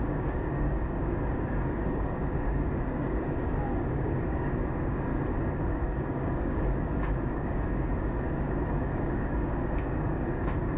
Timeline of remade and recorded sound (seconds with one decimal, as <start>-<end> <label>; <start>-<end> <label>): 0.0-5.1 remade; 5.1-5.7 recorded; 5.7-10.8 remade

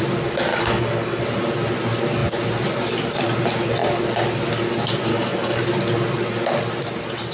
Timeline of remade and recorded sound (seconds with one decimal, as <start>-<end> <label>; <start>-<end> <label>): 0.0-0.5 recorded; 0.5-1.2 remade; 1.2-5.1 recorded; 5.1-5.6 remade; 5.6-7.3 recorded

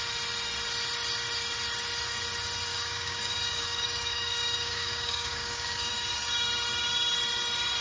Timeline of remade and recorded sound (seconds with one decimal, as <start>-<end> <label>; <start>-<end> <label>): 0.0-2.7 recorded; 2.7-5.9 remade; 5.9-7.8 recorded

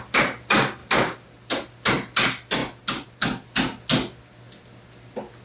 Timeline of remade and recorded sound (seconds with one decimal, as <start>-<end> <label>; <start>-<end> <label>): 0.0-5.4 recorded

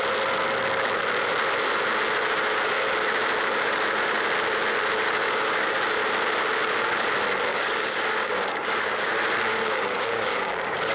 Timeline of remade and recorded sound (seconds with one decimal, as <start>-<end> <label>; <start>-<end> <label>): 0.0-7.5 recorded; 7.5-9.1 remade; 9.1-9.5 recorded; 9.5-10.9 remade

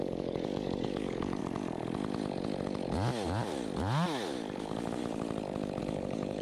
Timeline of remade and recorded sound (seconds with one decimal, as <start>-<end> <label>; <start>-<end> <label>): 0.0-1.4 remade; 1.4-4.6 recorded; 4.6-5.0 remade; 5.0-5.8 recorded; 5.8-6.4 remade

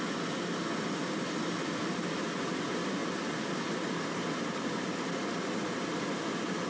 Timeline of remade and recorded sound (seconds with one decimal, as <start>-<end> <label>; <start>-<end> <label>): 0.0-6.7 recorded